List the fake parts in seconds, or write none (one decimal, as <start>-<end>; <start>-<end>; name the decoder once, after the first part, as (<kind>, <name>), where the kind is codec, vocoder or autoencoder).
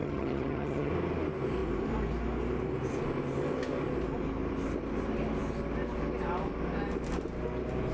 0.0-0.9 (vocoder, HiFi-GAN)